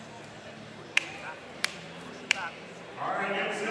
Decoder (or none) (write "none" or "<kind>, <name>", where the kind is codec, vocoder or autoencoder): vocoder, BigVGAN v2